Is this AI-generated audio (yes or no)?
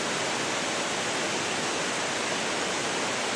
no